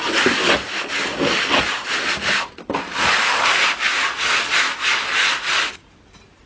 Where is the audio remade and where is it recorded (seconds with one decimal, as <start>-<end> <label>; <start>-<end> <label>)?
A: 0.0-6.5 recorded